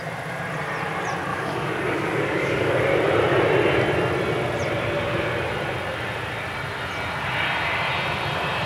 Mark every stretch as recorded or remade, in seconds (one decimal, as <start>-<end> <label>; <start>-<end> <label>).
0.0-1.3 recorded; 1.3-2.8 remade; 2.8-8.7 recorded